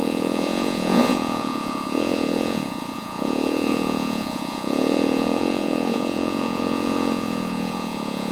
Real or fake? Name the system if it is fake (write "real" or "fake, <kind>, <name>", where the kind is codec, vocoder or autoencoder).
fake, vocoder, Vocos